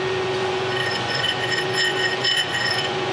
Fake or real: fake